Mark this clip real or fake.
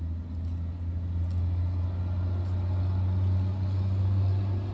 real